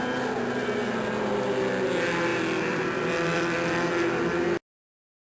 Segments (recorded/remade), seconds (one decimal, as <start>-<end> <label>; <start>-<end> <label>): 0.0-2.3 recorded; 2.3-3.9 remade; 3.9-5.3 recorded